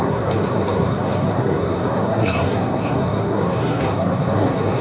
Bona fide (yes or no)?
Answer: no